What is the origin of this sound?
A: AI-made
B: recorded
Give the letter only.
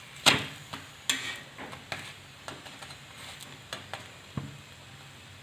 B